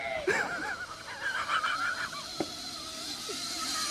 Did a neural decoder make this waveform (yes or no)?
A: no